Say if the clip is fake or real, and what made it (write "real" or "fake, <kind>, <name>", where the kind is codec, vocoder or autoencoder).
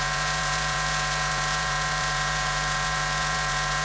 fake, vocoder, Vocos